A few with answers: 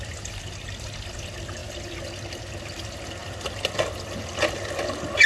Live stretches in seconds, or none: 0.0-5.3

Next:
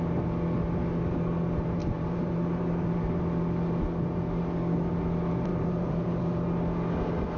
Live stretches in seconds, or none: 0.0-1.8; 3.2-5.5; 6.2-7.4

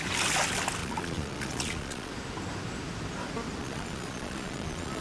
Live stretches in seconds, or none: 0.0-0.8; 2.1-3.6